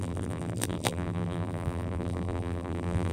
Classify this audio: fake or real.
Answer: fake